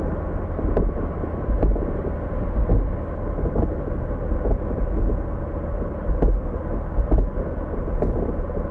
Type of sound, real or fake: real